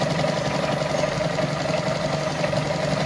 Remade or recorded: recorded